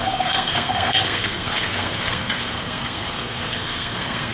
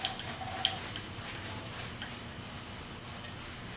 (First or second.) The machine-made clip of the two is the first